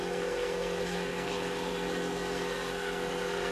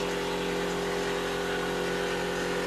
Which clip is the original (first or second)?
second